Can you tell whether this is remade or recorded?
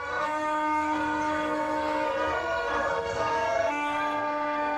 remade